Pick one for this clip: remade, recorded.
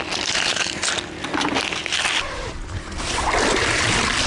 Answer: recorded